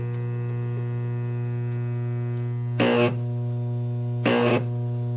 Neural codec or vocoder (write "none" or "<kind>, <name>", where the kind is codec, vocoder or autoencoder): none